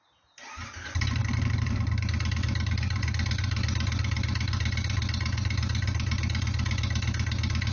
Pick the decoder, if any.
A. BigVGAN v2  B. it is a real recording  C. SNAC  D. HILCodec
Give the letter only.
B